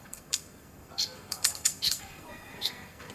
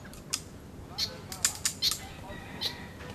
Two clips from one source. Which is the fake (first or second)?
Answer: first